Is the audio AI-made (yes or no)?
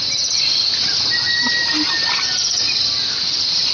no